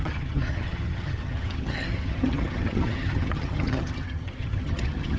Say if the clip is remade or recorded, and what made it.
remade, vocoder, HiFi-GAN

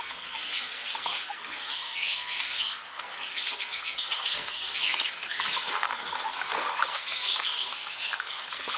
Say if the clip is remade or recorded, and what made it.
remade, codec, SNAC